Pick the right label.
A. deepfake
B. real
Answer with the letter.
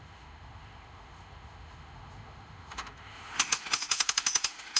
A